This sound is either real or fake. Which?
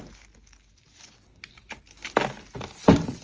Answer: real